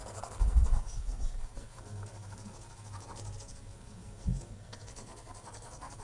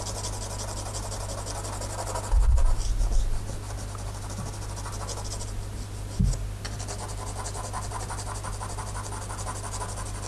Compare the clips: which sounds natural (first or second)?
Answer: second